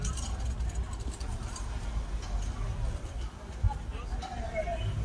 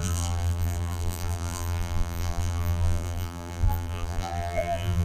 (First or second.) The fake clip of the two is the second